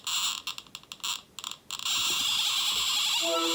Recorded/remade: recorded